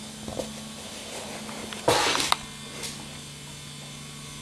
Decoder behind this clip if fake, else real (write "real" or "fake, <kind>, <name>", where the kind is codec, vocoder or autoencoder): real